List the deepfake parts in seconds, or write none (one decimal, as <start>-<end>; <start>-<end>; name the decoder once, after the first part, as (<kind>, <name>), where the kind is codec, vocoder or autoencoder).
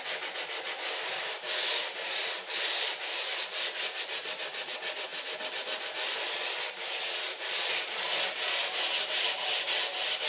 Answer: none